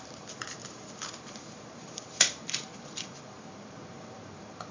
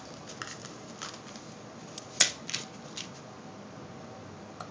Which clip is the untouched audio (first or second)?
second